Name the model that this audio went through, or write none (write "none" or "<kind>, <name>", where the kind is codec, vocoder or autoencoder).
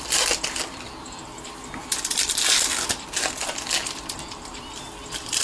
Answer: none